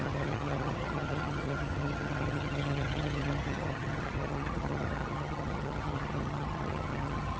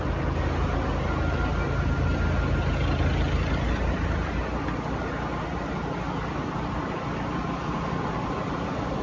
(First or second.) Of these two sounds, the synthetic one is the first